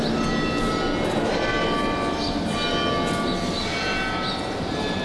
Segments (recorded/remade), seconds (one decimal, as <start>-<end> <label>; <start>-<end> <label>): 0.0-5.0 recorded